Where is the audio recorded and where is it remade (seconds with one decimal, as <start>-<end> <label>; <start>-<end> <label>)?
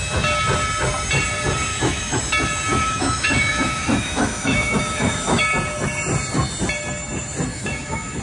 0.0-1.7 recorded; 1.7-2.2 remade; 2.2-2.7 recorded; 2.7-5.4 remade; 5.4-7.5 recorded; 7.5-8.2 remade